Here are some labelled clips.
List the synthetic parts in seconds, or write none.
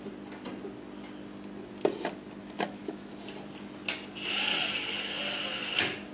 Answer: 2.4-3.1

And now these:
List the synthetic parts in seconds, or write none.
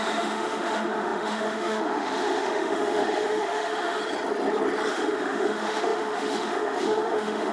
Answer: 0.0-4.0; 4.9-7.5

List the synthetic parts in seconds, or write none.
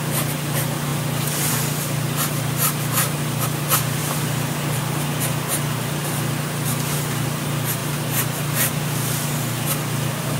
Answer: none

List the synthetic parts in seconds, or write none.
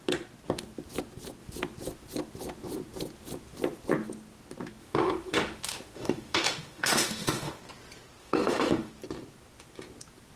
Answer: 4.8-7.6; 8.2-8.9